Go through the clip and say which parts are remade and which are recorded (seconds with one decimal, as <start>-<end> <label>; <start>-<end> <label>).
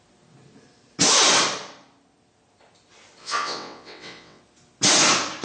0.0-3.2 recorded; 3.2-4.4 remade; 4.4-5.4 recorded